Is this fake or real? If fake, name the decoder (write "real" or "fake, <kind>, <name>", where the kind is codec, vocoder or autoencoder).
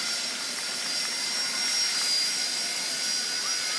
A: real